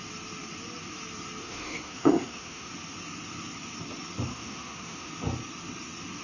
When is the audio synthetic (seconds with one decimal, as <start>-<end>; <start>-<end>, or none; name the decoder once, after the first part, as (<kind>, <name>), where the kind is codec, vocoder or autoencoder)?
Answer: 1.4-2.7 (autoencoder, DAC-VAE); 4.3-5.1